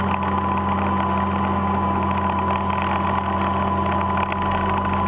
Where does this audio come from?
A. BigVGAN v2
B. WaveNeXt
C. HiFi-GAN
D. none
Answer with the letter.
D